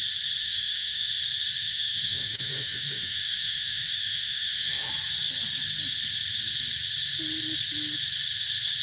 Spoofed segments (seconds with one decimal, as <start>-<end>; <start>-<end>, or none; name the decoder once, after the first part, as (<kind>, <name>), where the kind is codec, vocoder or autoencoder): 0.4-1.1 (autoencoder, DAC-VAE); 1.6-4.9